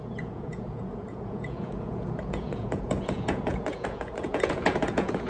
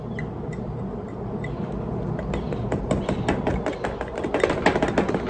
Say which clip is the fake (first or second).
first